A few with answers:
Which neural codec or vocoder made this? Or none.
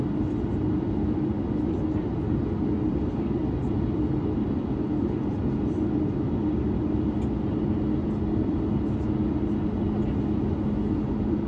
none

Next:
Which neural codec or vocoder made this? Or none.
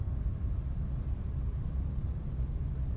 none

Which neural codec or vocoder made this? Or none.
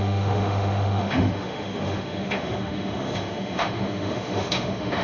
autoencoder, DAC-VAE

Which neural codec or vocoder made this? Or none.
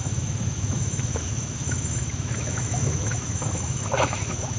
autoencoder, DAC-VAE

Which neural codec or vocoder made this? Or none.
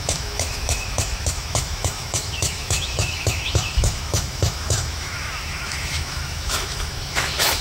autoencoder, DAC-VAE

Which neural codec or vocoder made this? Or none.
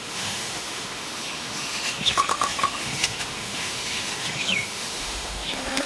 autoencoder, DAC-VAE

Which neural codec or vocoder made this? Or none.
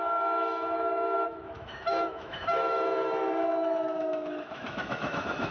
autoencoder, DAC-VAE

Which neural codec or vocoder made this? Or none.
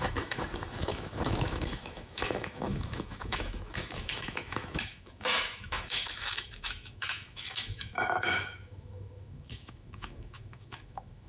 autoencoder, DAC-VAE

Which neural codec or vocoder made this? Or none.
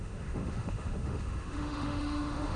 autoencoder, DAC-VAE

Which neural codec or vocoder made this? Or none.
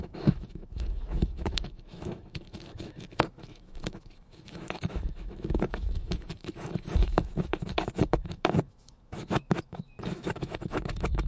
autoencoder, DAC-VAE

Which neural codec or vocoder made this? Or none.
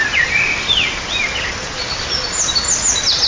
none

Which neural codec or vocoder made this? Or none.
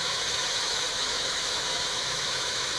autoencoder, DAC-VAE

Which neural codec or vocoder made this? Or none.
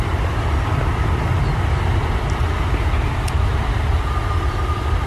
none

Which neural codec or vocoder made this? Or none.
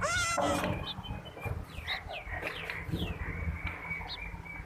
none